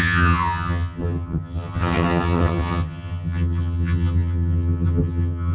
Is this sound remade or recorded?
remade